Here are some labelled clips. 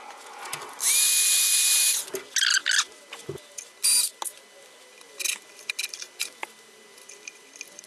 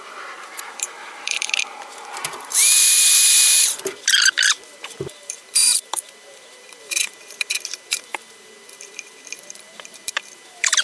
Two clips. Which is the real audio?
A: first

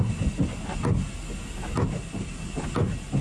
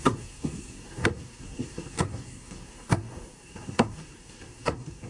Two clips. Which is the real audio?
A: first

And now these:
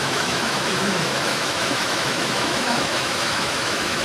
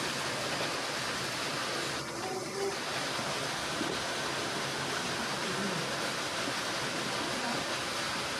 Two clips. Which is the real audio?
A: second